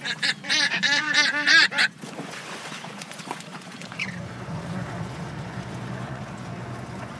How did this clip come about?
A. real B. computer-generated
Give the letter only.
B